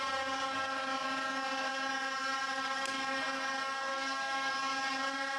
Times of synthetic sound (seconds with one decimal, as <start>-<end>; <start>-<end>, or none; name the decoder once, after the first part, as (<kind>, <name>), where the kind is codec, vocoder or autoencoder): 3.9-4.5 (codec, SNAC)